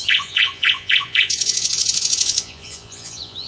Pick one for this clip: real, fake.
fake